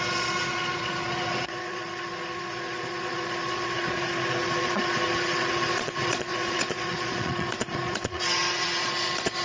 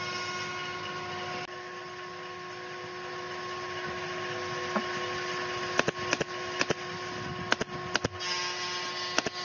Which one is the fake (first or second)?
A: first